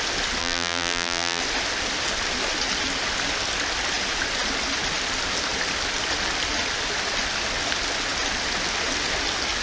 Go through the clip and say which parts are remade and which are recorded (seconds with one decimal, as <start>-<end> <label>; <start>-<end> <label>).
0.0-0.4 recorded; 0.4-1.4 remade; 1.4-9.6 recorded